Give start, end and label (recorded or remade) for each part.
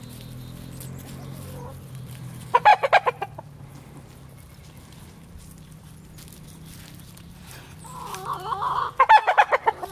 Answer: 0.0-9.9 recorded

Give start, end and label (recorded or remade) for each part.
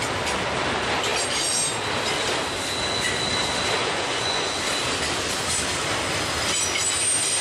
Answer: 0.0-3.8 recorded; 3.8-4.6 remade; 4.6-7.4 recorded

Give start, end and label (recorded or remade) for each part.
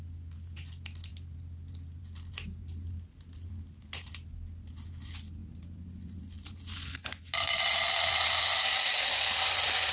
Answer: 0.0-9.9 recorded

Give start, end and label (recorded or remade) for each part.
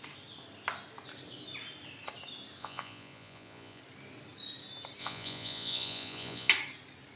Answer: 0.0-2.6 recorded; 2.6-3.8 remade; 3.8-5.0 recorded; 5.0-6.5 remade; 6.5-7.2 recorded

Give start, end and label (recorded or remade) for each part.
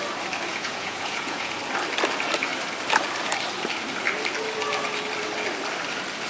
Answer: 0.0-0.5 recorded; 0.5-1.5 remade; 1.5-6.3 recorded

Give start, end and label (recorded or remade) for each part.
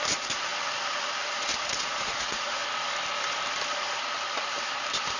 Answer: 0.0-0.5 remade; 0.5-1.6 recorded; 1.6-2.6 remade; 2.6-5.2 recorded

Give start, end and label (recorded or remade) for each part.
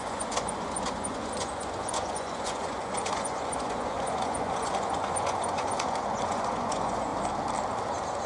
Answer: 0.0-7.1 remade; 7.1-8.3 recorded